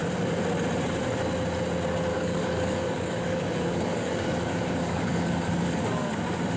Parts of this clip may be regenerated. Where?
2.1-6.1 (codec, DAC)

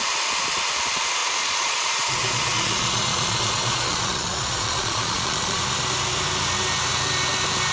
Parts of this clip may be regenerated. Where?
1.2-5.6 (vocoder, Vocos)

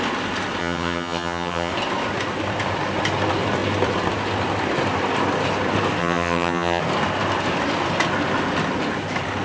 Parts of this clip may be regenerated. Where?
0.6-1.7 (vocoder, HiFi-GAN); 6.0-6.8

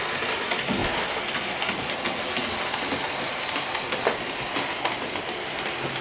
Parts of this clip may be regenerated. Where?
none

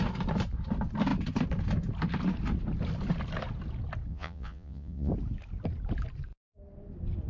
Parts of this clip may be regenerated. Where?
4.1-5.1 (vocoder, Vocos)